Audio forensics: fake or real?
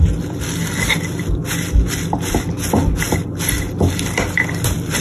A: real